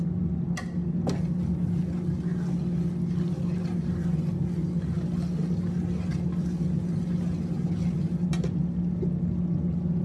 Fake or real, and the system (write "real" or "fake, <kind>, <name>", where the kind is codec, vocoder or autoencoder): real